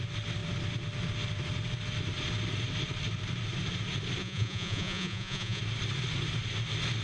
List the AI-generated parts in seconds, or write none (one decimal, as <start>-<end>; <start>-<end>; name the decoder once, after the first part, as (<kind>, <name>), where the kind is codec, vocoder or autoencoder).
4.2-5.6 (vocoder, Vocos)